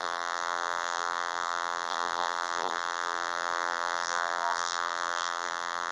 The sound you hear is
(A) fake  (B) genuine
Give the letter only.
A